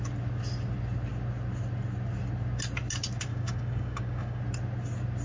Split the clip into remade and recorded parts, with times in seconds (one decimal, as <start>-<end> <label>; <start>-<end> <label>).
0.0-3.3 recorded; 3.3-4.4 remade; 4.4-5.2 recorded

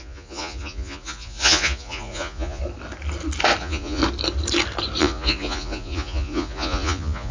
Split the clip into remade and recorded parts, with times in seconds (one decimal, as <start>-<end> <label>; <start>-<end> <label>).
0.0-2.6 remade; 2.6-3.6 recorded; 3.6-4.0 remade; 4.0-5.0 recorded; 5.0-7.3 remade

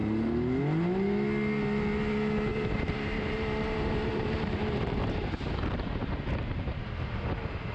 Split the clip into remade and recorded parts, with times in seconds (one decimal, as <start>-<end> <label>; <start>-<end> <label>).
0.0-2.5 recorded; 2.5-6.7 remade; 6.7-7.7 recorded

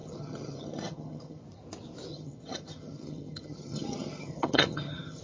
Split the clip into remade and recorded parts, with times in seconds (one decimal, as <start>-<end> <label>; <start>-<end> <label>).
0.0-1.4 remade; 1.4-2.1 recorded; 2.1-5.2 remade

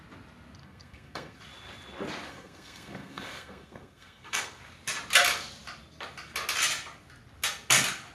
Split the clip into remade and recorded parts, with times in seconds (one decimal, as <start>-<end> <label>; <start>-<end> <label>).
0.0-0.6 recorded; 0.6-1.4 remade; 1.4-2.3 recorded; 2.3-4.6 remade; 4.6-8.1 recorded

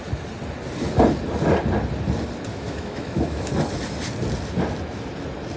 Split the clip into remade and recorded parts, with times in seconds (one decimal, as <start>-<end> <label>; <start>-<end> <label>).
0.0-2.5 recorded; 2.5-3.5 remade; 3.5-5.6 recorded

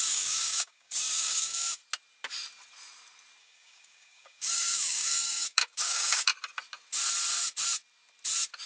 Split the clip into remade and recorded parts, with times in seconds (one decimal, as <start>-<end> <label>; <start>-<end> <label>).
0.0-1.8 remade; 1.8-3.4 recorded; 3.4-6.3 remade; 6.3-8.7 recorded

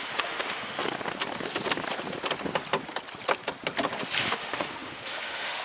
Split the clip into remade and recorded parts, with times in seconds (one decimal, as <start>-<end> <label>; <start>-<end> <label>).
0.0-0.8 remade; 0.8-4.2 recorded; 4.2-5.6 remade